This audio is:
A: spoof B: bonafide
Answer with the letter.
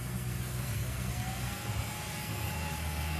A